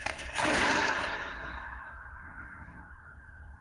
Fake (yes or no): yes